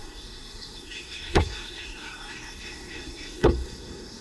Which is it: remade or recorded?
remade